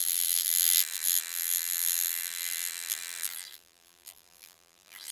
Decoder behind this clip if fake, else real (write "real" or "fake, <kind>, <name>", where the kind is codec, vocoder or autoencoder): fake, vocoder, BigVGAN v2